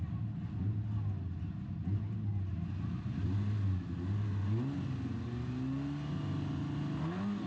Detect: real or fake real